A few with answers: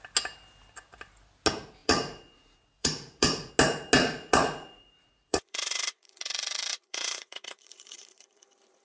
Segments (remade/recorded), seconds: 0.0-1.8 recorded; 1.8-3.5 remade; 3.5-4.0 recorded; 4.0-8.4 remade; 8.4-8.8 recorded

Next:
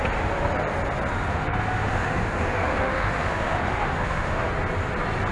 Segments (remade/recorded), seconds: 0.0-1.3 recorded; 1.3-4.5 remade; 4.5-5.3 recorded

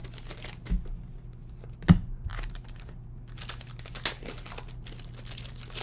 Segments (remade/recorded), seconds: 0.0-5.8 recorded

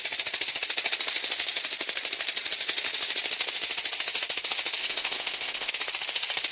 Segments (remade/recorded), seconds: 0.0-4.8 recorded; 4.8-5.7 remade; 5.7-6.5 recorded

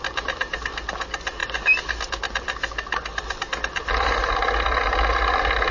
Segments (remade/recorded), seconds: 0.0-5.7 recorded

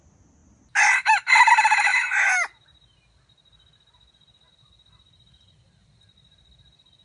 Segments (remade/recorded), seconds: 0.0-7.0 recorded

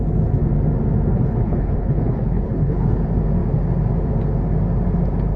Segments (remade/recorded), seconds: 0.0-1.1 recorded; 1.1-3.0 remade; 3.0-5.4 recorded